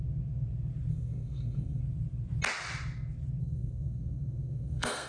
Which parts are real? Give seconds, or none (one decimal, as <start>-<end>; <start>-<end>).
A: 0.0-0.9; 1.8-3.4